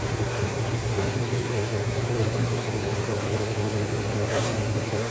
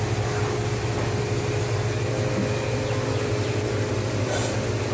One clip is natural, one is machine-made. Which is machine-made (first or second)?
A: first